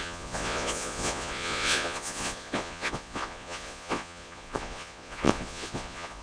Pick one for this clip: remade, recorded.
remade